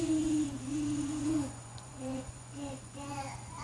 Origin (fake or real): fake